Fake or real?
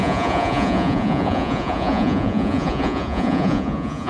fake